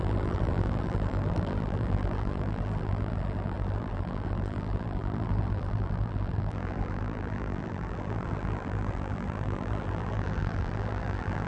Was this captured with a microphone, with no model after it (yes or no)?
no